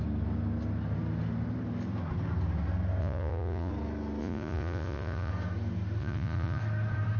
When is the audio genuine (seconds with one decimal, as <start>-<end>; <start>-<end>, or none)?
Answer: 0.0-3.0; 3.7-4.2; 5.3-6.0; 6.6-7.2